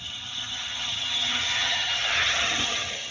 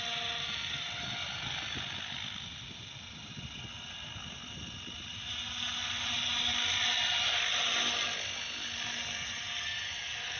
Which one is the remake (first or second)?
first